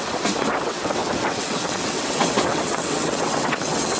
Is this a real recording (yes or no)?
no